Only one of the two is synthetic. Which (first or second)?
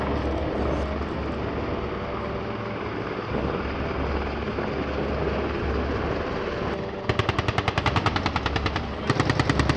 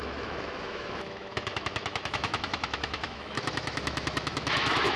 second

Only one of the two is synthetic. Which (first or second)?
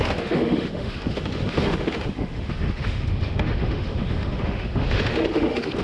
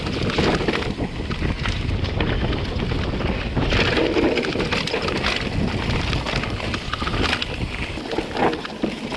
first